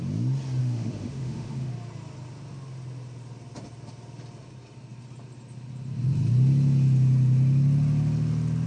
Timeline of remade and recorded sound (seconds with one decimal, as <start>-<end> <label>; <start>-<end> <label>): 0.0-0.6 recorded; 0.6-1.7 remade; 1.7-8.7 recorded